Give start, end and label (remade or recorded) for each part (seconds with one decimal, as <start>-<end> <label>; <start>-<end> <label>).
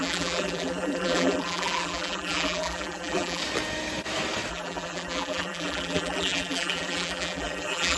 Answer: 0.0-3.4 remade; 3.4-4.5 recorded; 4.5-8.0 remade